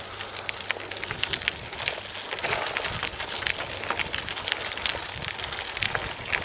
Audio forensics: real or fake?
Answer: real